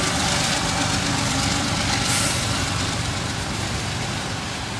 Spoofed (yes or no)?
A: yes